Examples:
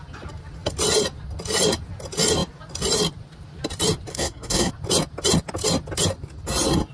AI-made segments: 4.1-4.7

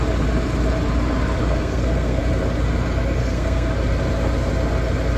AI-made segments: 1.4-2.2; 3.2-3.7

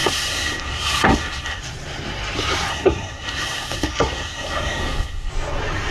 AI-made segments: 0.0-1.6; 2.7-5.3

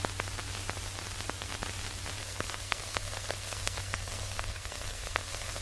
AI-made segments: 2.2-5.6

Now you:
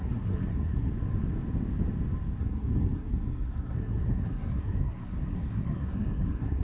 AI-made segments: 0.0-0.9; 2.4-6.6